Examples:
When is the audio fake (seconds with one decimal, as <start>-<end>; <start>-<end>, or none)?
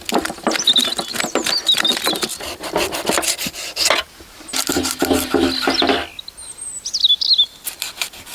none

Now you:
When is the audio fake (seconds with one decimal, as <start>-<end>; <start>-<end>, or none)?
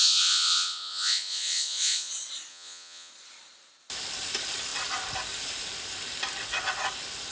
0.0-2.1; 2.5-3.1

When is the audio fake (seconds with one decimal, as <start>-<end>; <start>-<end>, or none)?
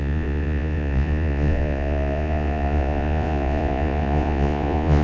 0.0-5.0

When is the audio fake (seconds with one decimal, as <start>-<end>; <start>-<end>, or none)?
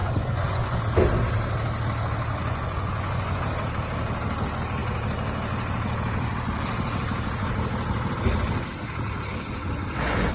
0.0-0.8; 2.4-3.4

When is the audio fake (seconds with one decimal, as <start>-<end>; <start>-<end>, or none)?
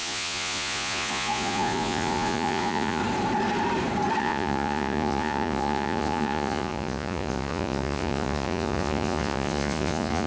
0.0-3.0; 4.2-10.3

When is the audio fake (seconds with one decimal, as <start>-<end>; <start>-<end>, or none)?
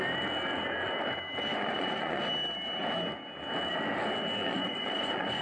1.5-2.2; 4.4-5.4